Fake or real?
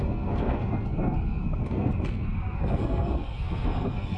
fake